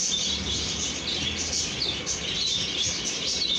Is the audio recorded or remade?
recorded